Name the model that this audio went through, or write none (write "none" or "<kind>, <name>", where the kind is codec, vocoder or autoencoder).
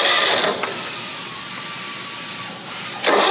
vocoder, BigVGAN v2